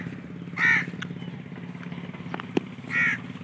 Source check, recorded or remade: recorded